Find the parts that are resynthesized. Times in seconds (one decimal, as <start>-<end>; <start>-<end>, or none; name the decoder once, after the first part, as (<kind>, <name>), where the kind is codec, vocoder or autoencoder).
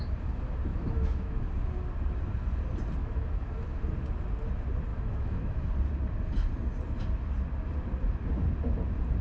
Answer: 0.7-1.4 (autoencoder, DAC-VAE); 3.0-3.8; 4.9-5.7